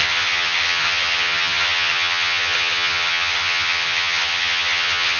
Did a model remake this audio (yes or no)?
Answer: yes